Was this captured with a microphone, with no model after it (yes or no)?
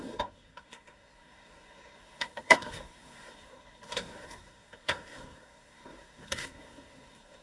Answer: no